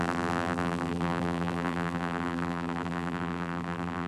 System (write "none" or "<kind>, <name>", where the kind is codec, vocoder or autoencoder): vocoder, BigVGAN v2